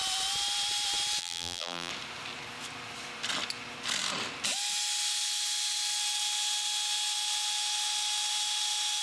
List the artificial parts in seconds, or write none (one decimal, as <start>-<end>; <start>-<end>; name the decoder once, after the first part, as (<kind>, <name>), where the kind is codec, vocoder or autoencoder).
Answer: 1.2-1.9 (vocoder, BigVGAN v2)